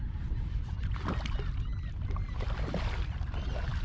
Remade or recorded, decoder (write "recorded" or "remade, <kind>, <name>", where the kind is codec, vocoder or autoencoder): recorded